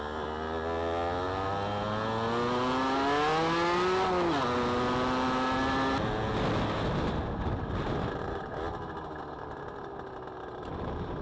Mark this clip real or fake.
real